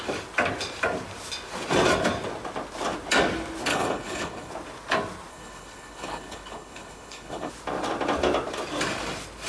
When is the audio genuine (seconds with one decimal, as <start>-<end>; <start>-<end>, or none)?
0.0-3.7; 4.5-5.3; 7.5-9.5